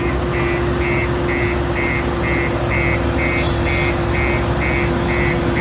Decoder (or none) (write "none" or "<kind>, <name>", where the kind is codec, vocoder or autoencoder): none